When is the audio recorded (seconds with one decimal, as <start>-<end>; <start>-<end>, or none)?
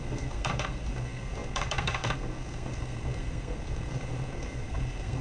none